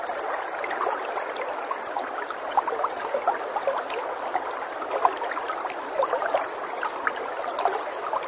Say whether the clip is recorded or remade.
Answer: remade